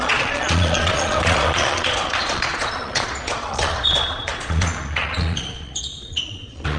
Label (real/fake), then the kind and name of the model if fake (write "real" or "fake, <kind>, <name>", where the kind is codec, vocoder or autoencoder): fake, vocoder, Vocos